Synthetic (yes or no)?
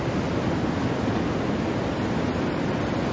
no